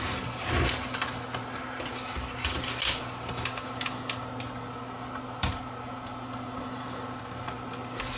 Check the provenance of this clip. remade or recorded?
recorded